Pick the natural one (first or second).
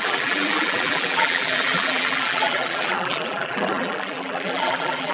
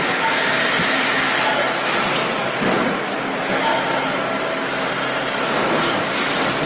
second